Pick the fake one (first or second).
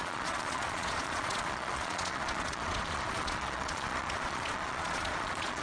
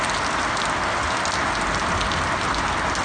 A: first